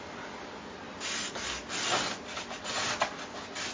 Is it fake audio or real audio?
real